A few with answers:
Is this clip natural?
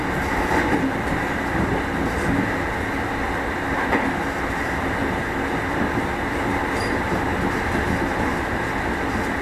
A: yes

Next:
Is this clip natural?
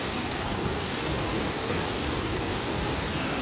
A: no